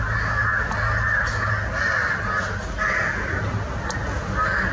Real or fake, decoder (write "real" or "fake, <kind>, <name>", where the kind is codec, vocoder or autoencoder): real